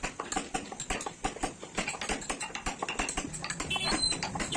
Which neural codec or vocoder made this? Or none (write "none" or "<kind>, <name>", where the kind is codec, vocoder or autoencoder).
none